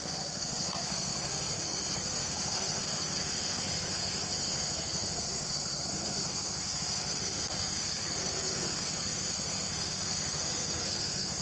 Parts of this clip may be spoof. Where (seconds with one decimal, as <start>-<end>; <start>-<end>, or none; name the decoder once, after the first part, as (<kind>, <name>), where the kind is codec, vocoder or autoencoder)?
0.0-11.4 (codec, SNAC)